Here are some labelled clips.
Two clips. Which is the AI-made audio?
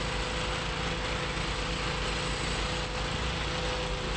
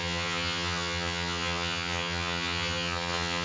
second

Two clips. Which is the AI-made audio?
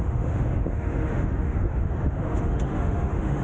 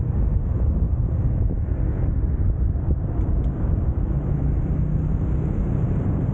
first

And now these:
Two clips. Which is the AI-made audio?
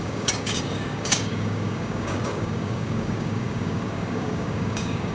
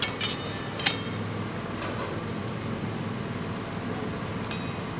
first